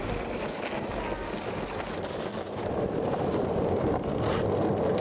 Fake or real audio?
real